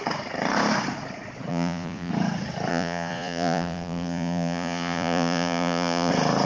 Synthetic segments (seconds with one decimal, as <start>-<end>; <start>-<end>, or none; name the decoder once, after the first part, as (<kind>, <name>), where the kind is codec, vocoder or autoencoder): 1.5-2.1 (vocoder, Vocos); 2.7-6.1